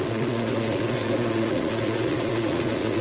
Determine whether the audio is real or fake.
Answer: fake